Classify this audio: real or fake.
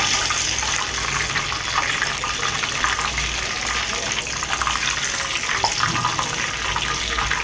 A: real